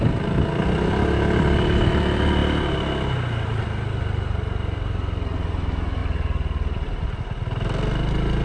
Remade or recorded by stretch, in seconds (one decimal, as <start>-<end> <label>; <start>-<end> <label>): 0.0-8.4 recorded